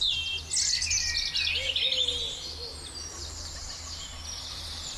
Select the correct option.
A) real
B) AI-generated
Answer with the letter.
A